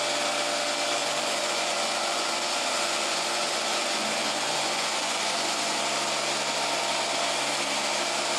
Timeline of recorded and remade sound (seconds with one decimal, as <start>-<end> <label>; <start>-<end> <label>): 0.0-1.0 recorded; 1.0-5.8 remade; 5.8-8.4 recorded